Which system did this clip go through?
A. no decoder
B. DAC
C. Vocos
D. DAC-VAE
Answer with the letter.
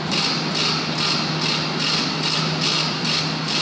A